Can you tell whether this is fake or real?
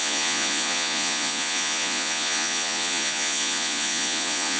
fake